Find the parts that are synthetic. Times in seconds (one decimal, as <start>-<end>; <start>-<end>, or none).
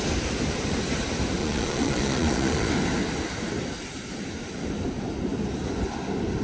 1.4-2.7